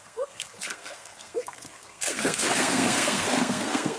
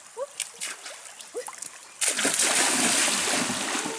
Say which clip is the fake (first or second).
first